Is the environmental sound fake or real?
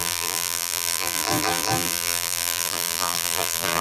fake